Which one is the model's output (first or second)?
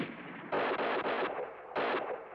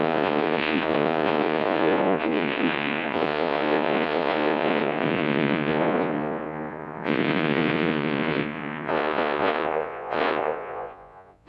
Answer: second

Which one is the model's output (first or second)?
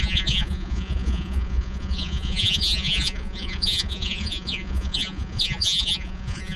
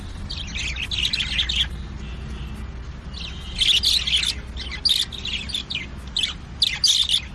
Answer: first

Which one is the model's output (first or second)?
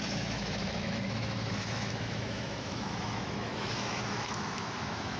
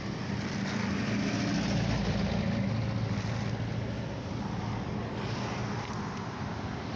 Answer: first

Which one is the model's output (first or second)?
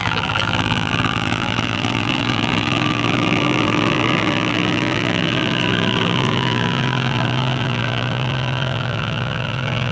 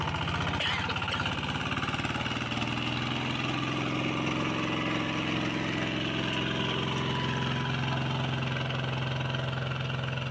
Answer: first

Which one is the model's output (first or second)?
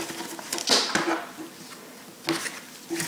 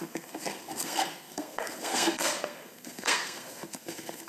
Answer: second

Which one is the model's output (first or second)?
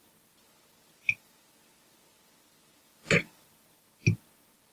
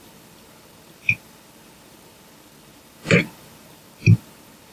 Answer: second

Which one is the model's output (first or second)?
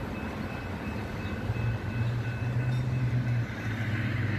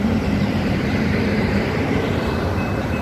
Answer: second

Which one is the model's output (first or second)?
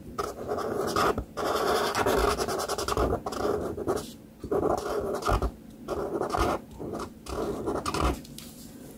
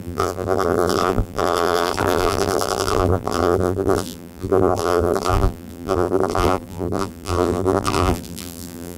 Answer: second